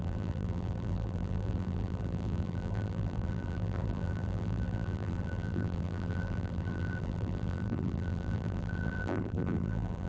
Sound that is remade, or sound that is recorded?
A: remade